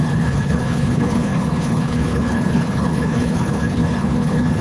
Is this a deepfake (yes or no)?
yes